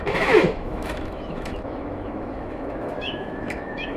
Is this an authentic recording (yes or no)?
no